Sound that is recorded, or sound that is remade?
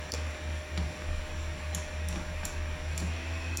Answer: remade